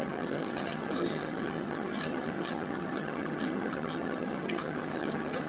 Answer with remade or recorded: remade